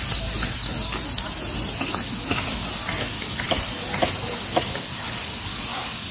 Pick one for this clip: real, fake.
real